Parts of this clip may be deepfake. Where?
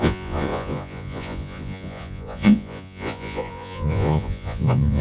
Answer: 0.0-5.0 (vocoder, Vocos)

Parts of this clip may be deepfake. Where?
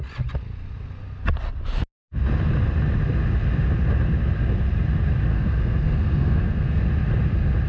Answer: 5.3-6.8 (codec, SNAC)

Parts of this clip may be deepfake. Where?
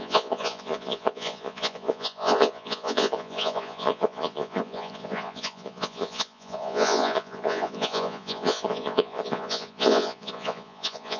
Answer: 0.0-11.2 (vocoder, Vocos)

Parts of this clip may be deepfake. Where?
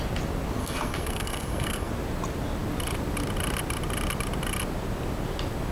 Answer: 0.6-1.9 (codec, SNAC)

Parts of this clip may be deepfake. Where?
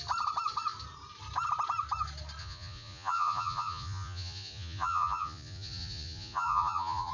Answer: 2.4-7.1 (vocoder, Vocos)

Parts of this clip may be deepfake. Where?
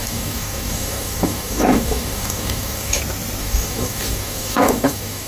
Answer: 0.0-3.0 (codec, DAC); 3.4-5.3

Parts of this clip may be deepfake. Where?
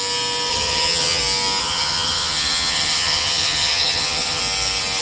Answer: 0.5-1.2 (vocoder, HiFi-GAN); 1.6-4.4